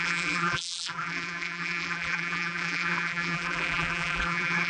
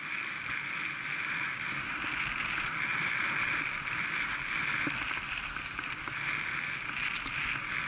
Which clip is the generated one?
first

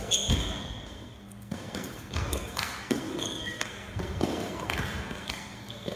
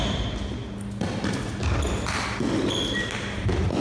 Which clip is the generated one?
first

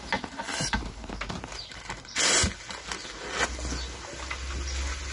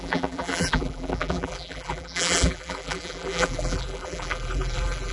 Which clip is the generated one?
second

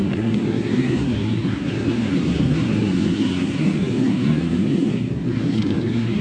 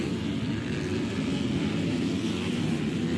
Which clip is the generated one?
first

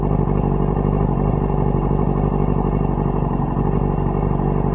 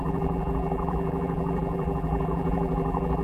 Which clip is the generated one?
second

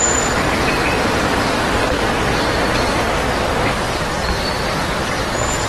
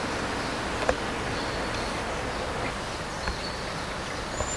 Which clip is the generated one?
first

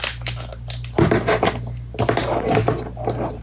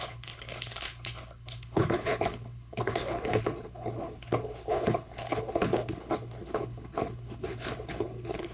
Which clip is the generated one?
second